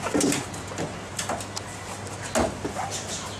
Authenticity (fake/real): real